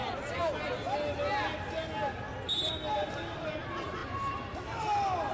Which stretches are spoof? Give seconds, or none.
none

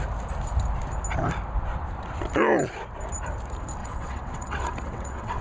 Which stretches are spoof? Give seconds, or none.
3.8-5.4

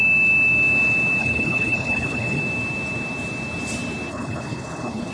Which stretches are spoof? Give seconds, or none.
1.2-2.4; 4.1-5.1

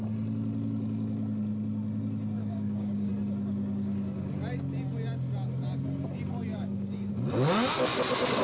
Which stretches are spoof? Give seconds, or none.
2.4-3.1; 6.5-7.1

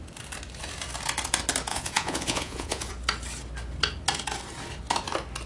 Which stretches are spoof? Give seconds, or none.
1.7-2.9

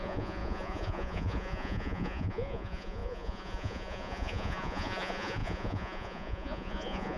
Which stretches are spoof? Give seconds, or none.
0.0-7.2

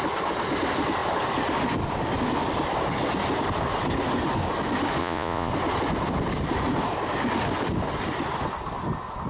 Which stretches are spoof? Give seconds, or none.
5.0-5.5

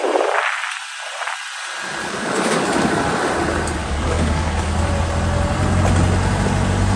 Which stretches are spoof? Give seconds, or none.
2.0-3.0; 3.8-4.9